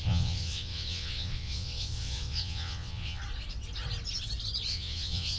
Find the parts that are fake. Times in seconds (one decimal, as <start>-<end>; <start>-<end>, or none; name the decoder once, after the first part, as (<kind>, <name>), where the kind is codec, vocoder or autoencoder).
0.0-3.2 (vocoder, WaveNeXt); 4.7-5.4